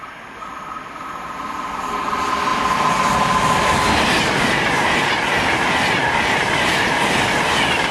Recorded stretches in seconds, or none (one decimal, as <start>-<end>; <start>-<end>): 0.0-7.9